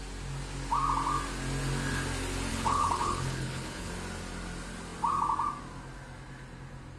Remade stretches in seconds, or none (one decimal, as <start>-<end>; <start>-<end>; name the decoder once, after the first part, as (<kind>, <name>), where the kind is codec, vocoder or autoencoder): 2.5-3.9 (codec, HILCodec)